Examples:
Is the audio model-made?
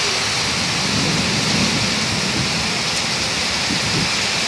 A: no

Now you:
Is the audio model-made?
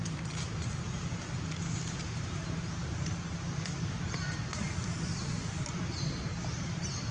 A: yes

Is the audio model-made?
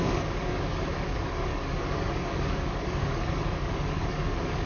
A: yes